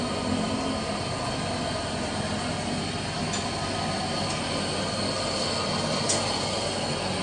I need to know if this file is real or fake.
real